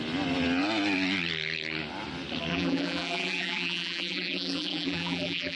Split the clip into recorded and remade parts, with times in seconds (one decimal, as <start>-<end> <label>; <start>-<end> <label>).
0.0-2.5 recorded; 2.5-5.6 remade